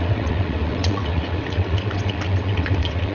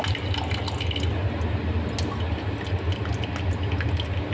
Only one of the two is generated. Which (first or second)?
first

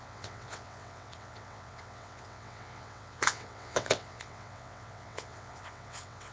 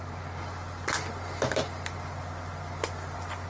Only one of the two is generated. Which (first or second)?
first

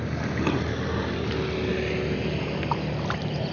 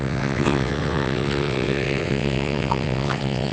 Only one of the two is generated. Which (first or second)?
second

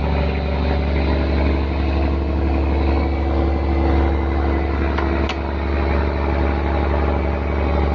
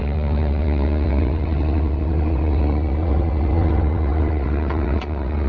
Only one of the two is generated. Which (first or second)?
second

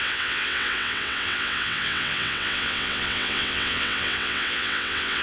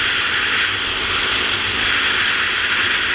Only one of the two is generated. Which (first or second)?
first